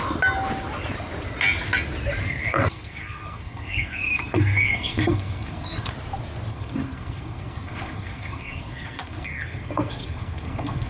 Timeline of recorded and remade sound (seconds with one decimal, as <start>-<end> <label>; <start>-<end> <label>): 0.0-2.2 recorded; 2.2-5.9 remade; 5.9-6.5 recorded; 6.5-10.9 remade